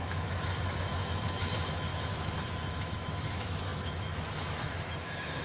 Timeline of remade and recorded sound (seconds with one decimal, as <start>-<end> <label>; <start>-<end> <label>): 0.0-5.4 remade